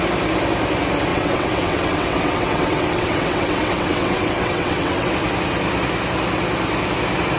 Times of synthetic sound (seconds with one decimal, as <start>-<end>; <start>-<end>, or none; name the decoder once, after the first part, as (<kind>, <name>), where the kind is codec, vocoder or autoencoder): 1.1-5.1 (vocoder, WaveNeXt)